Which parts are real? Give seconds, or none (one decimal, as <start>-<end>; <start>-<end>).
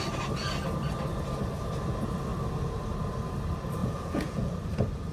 0.0-3.8; 4.5-5.1